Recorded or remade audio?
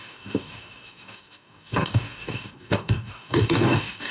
remade